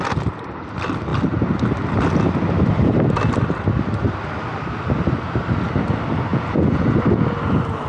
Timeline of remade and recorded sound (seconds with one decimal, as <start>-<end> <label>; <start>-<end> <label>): 0.0-6.3 recorded; 6.3-7.0 remade; 7.0-7.9 recorded